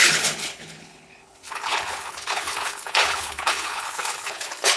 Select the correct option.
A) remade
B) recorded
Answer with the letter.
A